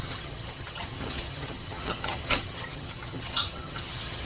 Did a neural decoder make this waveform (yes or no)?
yes